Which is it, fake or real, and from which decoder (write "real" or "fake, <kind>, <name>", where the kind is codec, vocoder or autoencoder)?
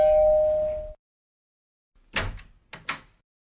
real